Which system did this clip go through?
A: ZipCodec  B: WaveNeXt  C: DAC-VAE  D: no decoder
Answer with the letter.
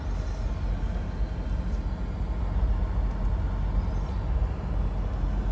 D